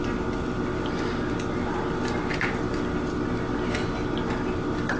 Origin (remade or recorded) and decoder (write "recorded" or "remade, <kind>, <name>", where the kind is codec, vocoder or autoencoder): recorded